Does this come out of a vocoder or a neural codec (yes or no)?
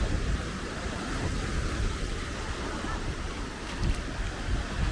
yes